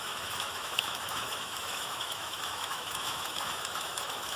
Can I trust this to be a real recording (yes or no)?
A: no